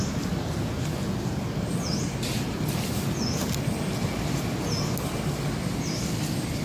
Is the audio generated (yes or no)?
no